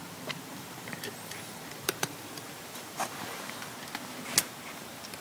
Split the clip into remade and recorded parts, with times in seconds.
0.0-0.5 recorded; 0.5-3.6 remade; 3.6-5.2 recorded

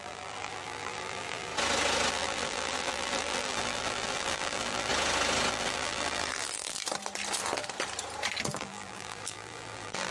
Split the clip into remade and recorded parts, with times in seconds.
0.0-1.5 remade; 1.5-2.1 recorded; 2.1-4.9 remade; 4.9-5.5 recorded; 5.5-6.8 remade; 6.8-8.6 recorded; 8.6-10.1 remade

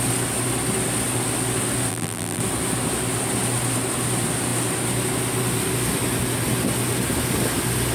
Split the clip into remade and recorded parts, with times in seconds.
0.0-1.9 recorded; 1.9-2.4 remade; 2.4-7.9 recorded

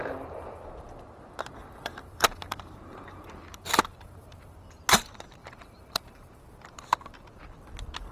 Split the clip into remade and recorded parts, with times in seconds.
0.0-1.6 recorded; 1.6-4.7 remade; 4.7-5.4 recorded; 5.4-6.8 remade; 6.8-8.1 recorded

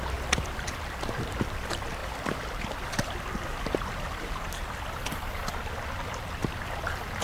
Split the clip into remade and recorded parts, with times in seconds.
0.0-2.0 recorded; 2.0-3.9 remade; 3.9-7.2 recorded